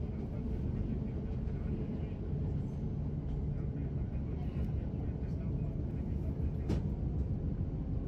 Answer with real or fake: real